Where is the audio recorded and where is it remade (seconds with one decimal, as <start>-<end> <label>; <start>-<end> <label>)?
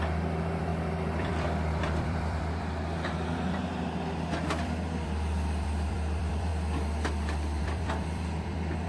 0.0-6.5 remade; 6.5-7.6 recorded; 7.6-8.9 remade